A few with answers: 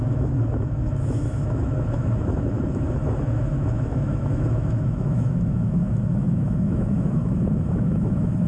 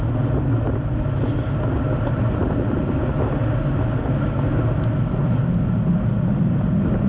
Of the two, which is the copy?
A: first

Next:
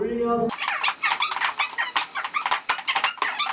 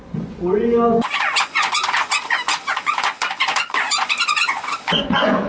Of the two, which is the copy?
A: second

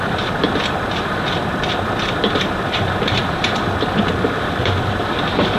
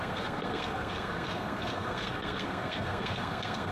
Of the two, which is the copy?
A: second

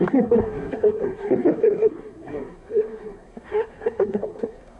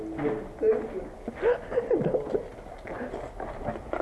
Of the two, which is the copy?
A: first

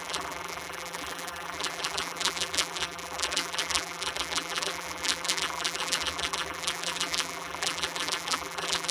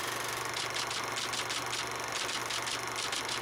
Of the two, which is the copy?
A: first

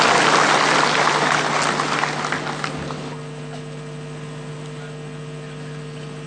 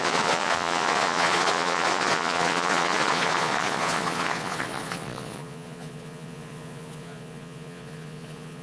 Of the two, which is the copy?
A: second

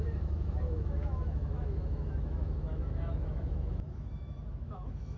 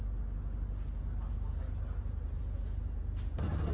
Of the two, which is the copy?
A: first